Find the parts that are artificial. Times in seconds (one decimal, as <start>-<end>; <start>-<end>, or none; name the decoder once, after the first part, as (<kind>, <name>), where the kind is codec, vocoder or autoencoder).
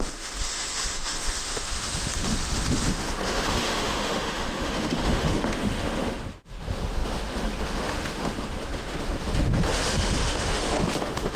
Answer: 0.0-11.4 (autoencoder, DAC-VAE)